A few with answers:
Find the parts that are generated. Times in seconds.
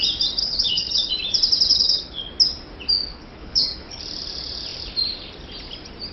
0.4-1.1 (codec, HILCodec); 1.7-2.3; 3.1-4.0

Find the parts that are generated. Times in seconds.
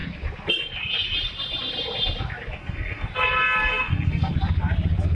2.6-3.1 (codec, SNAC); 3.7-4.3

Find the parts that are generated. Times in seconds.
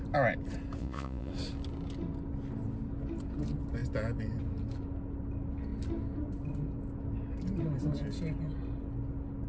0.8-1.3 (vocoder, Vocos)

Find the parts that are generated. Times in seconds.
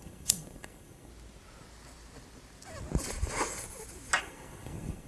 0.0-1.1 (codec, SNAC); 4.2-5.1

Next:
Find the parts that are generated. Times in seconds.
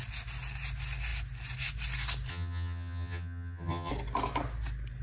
2.3-3.9 (vocoder, HiFi-GAN)